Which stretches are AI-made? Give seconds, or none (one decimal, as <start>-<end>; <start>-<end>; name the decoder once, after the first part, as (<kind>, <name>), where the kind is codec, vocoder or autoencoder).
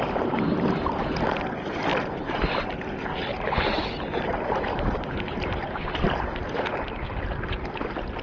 1.9-2.7 (vocoder, BigVGAN v2); 3.3-5.8